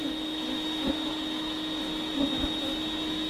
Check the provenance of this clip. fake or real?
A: real